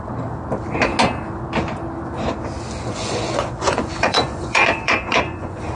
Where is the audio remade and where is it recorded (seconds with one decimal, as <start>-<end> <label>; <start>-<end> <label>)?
0.0-2.9 recorded; 2.9-5.7 remade